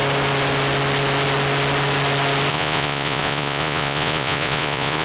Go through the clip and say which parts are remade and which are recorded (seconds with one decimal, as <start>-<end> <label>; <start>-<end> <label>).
0.0-2.5 recorded; 2.5-5.0 remade